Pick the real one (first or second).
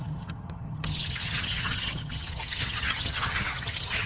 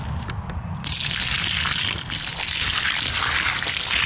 second